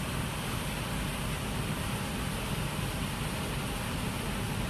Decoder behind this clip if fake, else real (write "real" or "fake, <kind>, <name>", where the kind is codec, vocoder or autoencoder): real